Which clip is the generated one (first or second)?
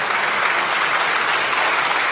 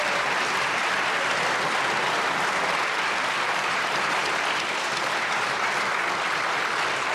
second